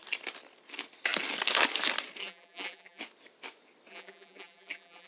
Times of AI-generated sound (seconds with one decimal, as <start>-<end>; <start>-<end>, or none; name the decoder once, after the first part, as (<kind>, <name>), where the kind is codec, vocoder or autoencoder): 2.2-3.0 (vocoder, BigVGAN v2); 3.9-5.1